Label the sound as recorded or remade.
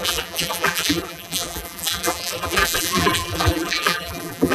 remade